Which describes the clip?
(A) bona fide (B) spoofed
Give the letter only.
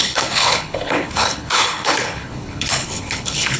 B